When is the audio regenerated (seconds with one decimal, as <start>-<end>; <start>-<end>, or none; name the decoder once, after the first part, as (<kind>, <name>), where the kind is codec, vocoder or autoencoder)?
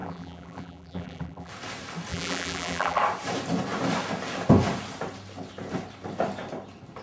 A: 0.0-1.5 (vocoder, BigVGAN v2); 2.1-3.0